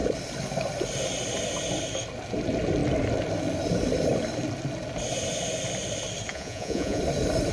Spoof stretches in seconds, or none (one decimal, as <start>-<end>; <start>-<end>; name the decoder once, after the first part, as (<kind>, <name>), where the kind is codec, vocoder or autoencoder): 6.3-7.0 (vocoder, Vocos)